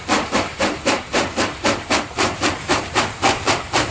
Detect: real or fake fake